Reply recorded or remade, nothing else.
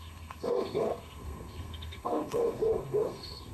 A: remade